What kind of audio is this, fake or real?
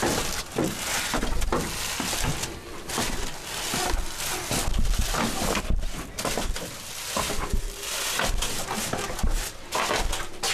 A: real